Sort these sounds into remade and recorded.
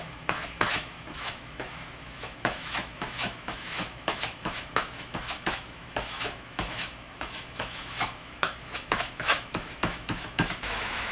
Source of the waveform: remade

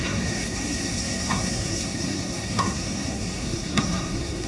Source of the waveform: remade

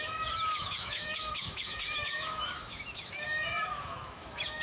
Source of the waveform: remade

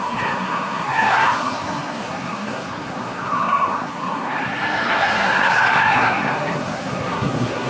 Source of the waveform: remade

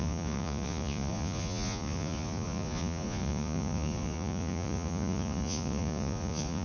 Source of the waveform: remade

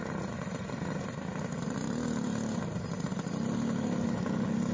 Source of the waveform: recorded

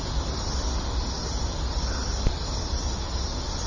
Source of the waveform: recorded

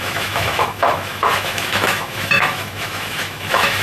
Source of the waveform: remade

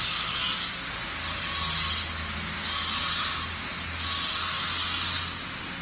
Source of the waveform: recorded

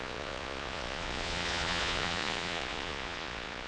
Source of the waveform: remade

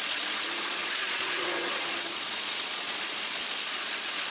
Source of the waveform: remade